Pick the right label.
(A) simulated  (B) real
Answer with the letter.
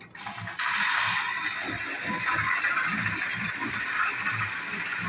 B